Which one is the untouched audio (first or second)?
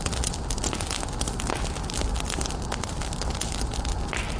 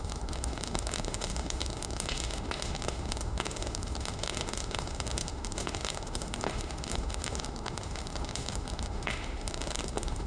first